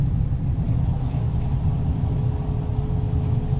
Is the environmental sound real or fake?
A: real